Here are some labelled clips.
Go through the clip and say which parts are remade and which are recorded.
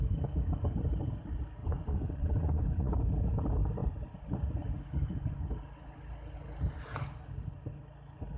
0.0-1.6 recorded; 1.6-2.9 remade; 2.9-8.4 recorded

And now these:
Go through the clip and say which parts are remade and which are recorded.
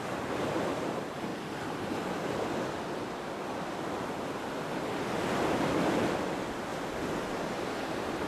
0.0-1.3 remade; 1.3-6.3 recorded; 6.3-6.7 remade; 6.7-7.8 recorded; 7.8-8.3 remade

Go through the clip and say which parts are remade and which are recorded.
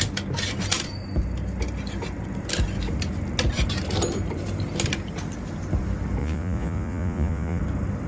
0.0-6.2 recorded; 6.2-7.6 remade; 7.6-8.1 recorded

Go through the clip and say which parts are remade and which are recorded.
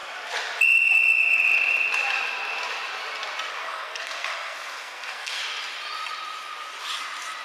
0.0-3.5 recorded; 3.5-5.4 remade; 5.4-7.4 recorded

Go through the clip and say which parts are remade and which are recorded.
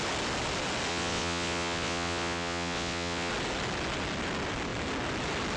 0.0-0.9 recorded; 0.9-3.3 remade; 3.3-5.6 recorded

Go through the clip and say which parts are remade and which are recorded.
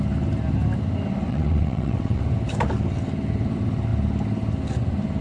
0.0-1.3 recorded; 1.3-2.2 remade; 2.2-5.2 recorded